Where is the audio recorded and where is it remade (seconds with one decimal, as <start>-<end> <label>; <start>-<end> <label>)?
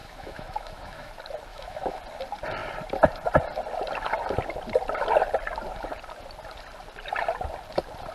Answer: 0.0-1.1 remade; 1.1-1.5 recorded; 1.5-2.0 remade; 2.0-8.1 recorded